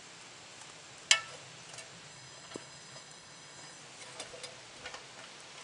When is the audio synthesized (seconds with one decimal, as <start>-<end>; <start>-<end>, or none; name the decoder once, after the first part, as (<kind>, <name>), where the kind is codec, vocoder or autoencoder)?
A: 2.1-3.8 (codec, DAC)